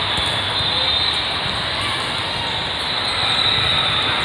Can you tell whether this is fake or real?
real